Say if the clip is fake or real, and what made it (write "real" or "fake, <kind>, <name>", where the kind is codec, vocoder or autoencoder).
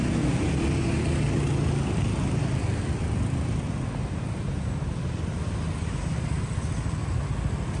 real